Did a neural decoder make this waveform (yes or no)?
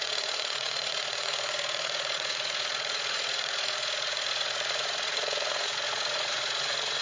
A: yes